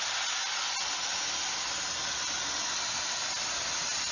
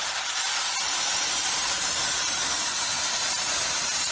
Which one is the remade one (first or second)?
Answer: second